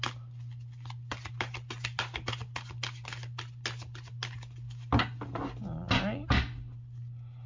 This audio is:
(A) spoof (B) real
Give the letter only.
B